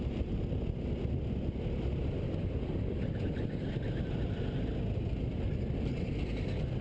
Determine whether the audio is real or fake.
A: real